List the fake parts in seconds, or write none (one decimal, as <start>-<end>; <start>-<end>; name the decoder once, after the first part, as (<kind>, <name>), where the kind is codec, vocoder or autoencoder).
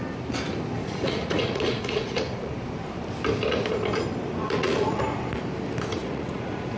0.8-2.5 (vocoder, Vocos); 4.4-5.0; 6.0-6.8